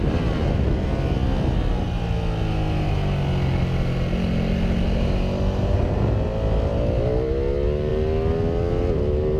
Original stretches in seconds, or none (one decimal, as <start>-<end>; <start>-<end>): 0.0-9.4